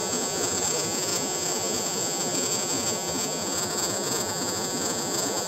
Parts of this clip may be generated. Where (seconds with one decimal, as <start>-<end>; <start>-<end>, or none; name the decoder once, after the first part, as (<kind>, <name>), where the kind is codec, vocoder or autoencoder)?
0.0-5.5 (vocoder, Vocos)